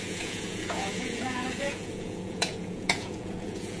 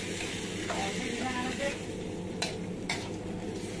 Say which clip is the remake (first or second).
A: first